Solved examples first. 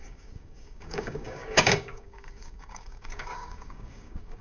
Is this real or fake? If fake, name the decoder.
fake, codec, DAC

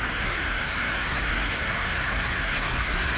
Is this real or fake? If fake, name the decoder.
fake, codec, SNAC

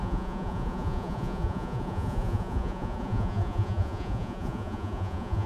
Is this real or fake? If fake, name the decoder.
fake, vocoder, Vocos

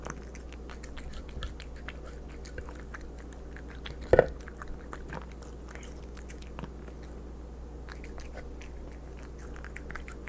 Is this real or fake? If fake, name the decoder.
real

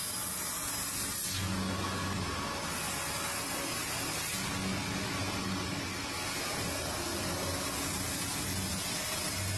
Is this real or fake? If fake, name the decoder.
real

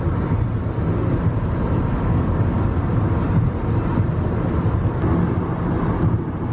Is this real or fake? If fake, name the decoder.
real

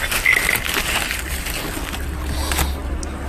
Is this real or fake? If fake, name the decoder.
real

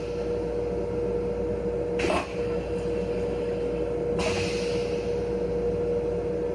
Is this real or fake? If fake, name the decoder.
real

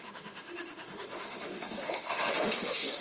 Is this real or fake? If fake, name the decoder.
fake, autoencoder, DAC-VAE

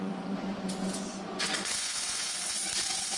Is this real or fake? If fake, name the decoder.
fake, vocoder, Vocos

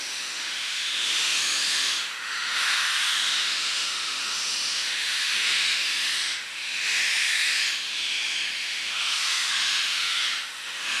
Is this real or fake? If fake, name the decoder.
fake, autoencoder, DAC-VAE